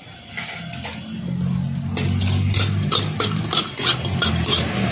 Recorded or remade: recorded